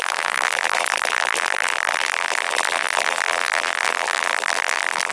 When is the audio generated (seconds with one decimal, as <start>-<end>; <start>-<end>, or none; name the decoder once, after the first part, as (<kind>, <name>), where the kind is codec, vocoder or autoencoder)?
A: 0.0-5.1 (vocoder, BigVGAN v2)